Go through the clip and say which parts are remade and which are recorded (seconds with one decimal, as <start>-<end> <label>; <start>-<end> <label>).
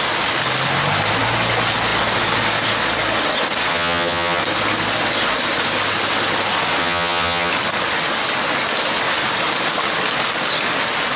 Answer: 0.0-3.7 recorded; 3.7-4.4 remade; 4.4-6.8 recorded; 6.8-7.5 remade; 7.5-11.2 recorded